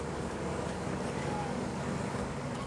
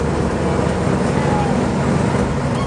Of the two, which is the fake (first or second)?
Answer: first